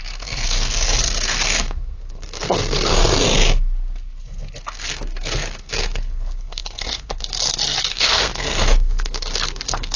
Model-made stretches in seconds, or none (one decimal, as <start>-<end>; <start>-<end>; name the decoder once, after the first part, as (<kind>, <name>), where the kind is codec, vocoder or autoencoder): 0.0-3.0 (codec, SNAC); 4.6-10.0